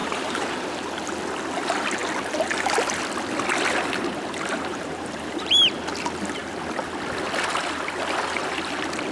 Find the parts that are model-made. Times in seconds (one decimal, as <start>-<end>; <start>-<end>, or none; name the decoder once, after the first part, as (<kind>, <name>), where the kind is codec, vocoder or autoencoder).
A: 0.0-0.7 (vocoder, BigVGAN v2); 4.7-5.6

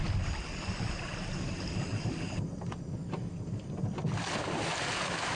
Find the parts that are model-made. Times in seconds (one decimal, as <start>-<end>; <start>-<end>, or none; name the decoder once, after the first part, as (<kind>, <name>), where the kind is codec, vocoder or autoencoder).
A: none

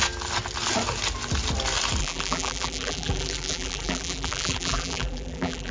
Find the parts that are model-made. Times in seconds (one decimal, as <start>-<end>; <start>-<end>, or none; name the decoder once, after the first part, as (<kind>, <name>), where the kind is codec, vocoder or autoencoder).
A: 2.0-5.7 (vocoder, BigVGAN v2)

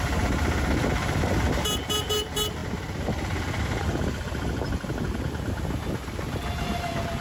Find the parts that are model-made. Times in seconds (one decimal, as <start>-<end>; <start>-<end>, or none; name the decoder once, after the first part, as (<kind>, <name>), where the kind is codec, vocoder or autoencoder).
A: none